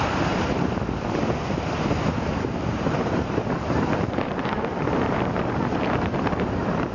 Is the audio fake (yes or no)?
yes